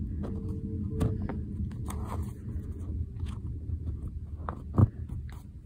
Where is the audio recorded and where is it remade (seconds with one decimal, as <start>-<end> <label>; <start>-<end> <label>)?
0.0-2.9 recorded; 2.9-4.1 remade; 4.1-5.7 recorded